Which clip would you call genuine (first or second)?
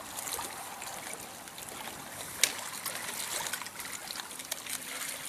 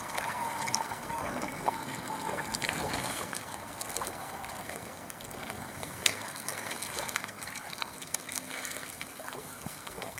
first